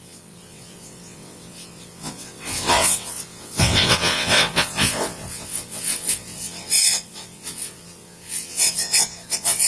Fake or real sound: fake